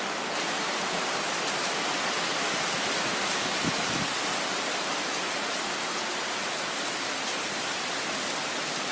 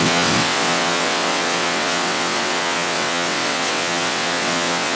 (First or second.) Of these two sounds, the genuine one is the first